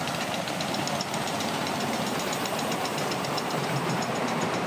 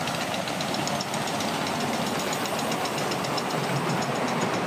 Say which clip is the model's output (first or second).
first